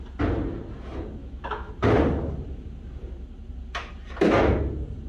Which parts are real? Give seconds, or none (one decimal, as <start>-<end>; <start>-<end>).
0.0-1.2; 1.7-5.1